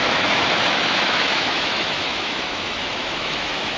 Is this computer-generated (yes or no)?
yes